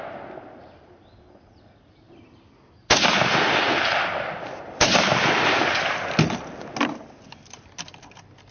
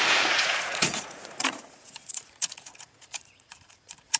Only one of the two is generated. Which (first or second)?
second